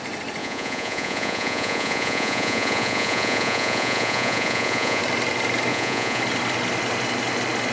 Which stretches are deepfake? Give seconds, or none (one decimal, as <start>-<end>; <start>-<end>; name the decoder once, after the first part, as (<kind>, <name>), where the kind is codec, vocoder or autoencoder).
0.4-5.0 (vocoder, Vocos); 5.7-6.2